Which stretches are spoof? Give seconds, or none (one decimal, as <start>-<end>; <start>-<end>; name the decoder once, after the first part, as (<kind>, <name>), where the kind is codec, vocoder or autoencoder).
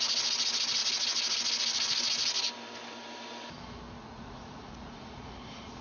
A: 4.0-5.8 (vocoder, Vocos)